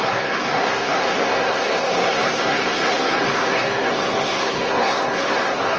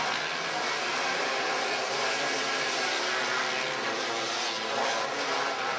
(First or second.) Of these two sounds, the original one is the second